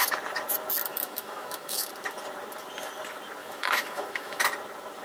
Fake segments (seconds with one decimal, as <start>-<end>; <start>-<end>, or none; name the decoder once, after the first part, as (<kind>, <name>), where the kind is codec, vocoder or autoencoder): 0.9-1.9 (autoencoder, DAC-VAE); 3.4-4.4